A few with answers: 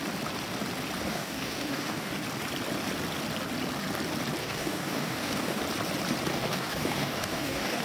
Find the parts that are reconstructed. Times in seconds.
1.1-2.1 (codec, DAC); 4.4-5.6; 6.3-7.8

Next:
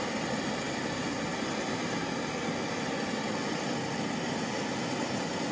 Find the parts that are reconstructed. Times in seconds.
none